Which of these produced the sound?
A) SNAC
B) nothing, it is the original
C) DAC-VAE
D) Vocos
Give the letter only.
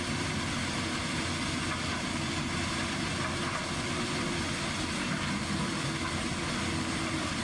B